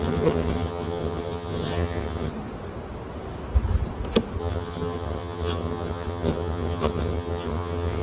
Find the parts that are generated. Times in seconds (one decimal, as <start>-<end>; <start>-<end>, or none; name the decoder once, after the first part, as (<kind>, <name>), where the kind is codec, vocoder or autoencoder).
0.0-2.3 (vocoder, HiFi-GAN); 4.4-8.0